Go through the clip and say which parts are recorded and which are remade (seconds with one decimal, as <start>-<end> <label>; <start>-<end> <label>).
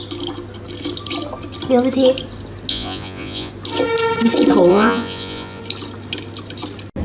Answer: 0.0-2.7 recorded; 2.7-3.5 remade; 3.5-4.7 recorded; 4.7-5.6 remade; 5.6-7.0 recorded